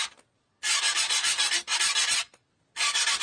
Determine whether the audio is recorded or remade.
recorded